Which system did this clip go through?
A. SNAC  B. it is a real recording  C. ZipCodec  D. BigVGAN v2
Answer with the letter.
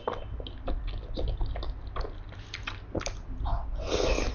B